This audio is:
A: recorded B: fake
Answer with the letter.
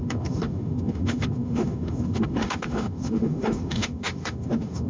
B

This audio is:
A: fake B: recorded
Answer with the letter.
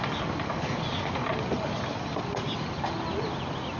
B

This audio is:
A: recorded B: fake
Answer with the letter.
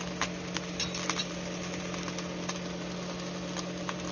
A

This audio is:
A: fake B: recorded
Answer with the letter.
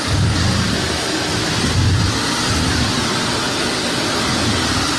B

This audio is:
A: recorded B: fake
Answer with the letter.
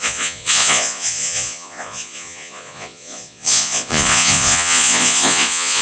B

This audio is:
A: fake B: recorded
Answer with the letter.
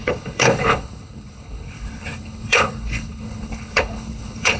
A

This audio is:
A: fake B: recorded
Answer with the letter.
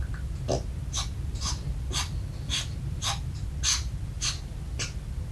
B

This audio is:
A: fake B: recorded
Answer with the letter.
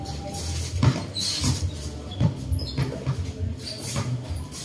B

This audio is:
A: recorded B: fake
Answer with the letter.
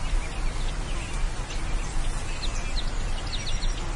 A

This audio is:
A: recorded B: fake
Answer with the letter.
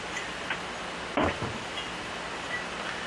A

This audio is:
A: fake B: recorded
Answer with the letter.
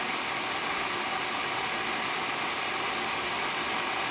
B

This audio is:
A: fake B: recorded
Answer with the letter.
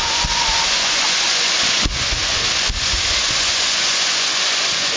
A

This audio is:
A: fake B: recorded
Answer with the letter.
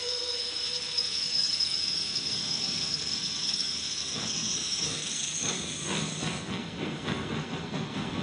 A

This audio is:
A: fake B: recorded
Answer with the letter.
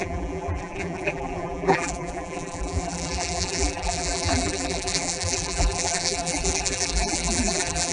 A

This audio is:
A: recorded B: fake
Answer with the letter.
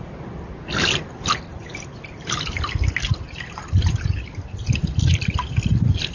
A